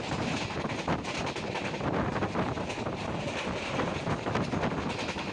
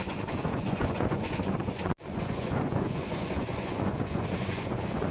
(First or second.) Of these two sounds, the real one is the first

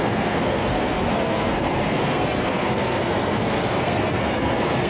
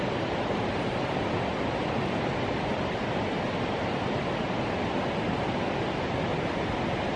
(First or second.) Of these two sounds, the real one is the second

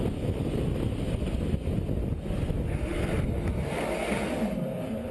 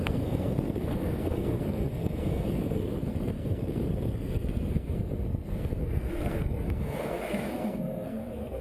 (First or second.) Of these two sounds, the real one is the first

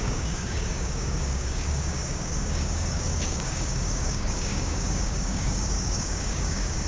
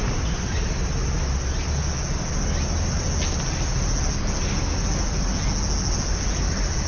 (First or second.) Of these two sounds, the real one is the second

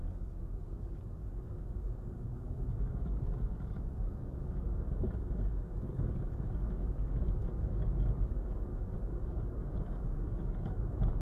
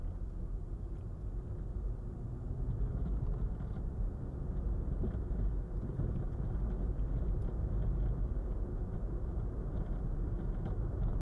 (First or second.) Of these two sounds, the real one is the second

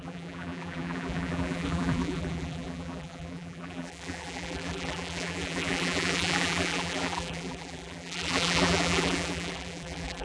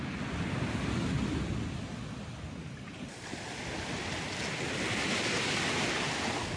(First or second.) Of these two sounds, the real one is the second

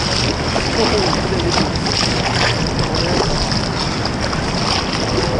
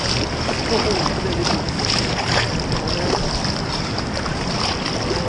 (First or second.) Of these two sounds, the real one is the first